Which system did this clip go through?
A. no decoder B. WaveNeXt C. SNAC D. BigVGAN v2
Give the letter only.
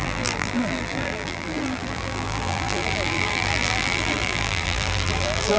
D